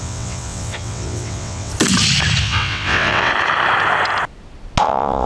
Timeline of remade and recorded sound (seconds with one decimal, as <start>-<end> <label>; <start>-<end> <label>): 0.0-1.7 remade; 1.7-2.4 recorded; 2.4-3.3 remade; 3.3-4.8 recorded; 4.8-5.3 remade